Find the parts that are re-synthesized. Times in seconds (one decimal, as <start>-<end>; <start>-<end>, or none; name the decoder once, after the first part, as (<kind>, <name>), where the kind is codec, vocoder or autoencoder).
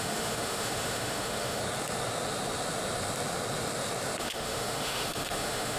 0.0-1.6 (autoencoder, DAC-VAE); 4.2-5.8